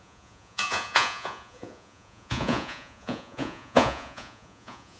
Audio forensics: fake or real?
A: fake